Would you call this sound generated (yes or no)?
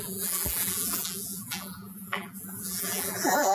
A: yes